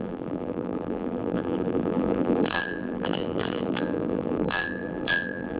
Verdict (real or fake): fake